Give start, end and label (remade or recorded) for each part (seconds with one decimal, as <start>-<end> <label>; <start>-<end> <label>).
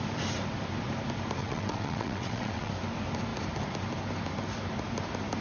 0.0-1.4 recorded; 1.4-2.7 remade; 2.7-5.4 recorded